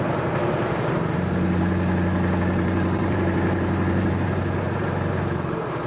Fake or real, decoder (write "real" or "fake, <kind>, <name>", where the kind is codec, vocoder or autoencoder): fake, vocoder, BigVGAN v2